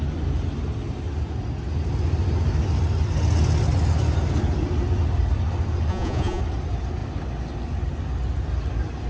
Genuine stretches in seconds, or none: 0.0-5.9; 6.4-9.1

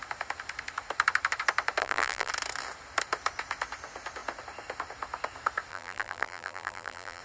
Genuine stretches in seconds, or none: 0.0-1.8; 2.3-5.7

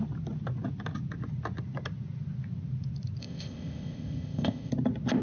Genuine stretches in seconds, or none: 0.0-3.2; 4.7-5.2

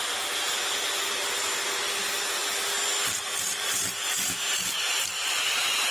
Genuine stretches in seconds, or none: 0.0-5.9